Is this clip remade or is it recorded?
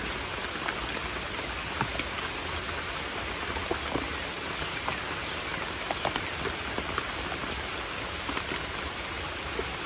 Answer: recorded